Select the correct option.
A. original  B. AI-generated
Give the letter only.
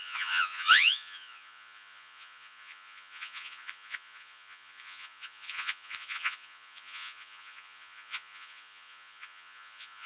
B